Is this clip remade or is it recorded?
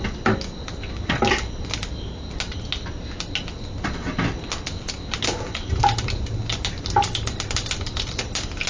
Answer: recorded